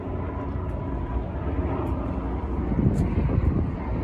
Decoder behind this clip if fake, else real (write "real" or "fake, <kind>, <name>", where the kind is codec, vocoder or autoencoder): real